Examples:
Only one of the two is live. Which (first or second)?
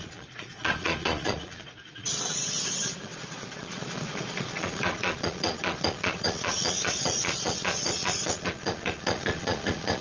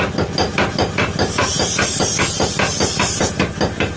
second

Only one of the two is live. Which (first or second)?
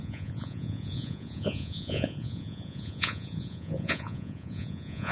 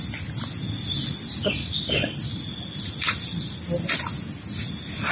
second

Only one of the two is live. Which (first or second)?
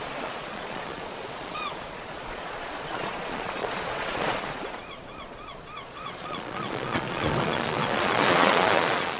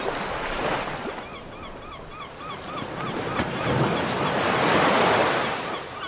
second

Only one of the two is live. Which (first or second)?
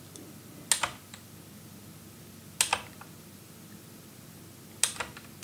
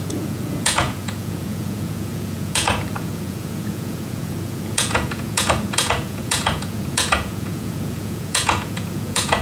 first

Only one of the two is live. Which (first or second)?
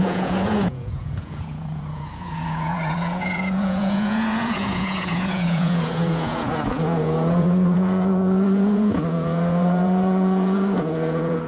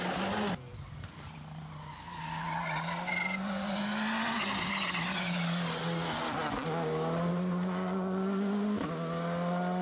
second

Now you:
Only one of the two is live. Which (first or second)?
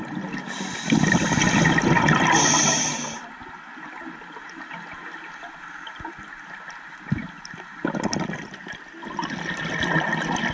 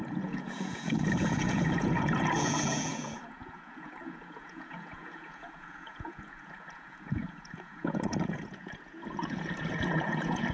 first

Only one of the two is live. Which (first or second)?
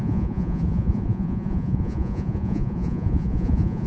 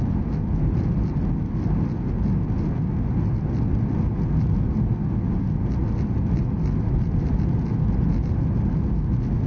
second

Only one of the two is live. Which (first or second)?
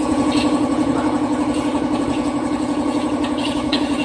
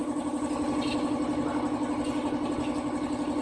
second